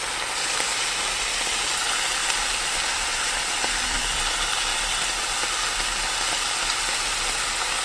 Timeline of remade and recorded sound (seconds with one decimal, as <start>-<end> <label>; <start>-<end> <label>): 0.0-2.2 recorded; 2.2-4.2 remade; 4.2-7.8 recorded